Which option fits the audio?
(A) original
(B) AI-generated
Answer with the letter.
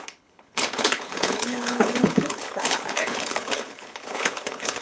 B